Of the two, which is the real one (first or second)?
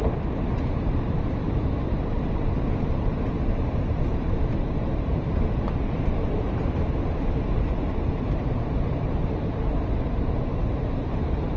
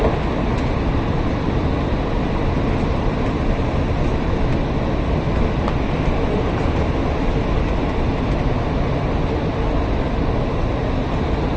second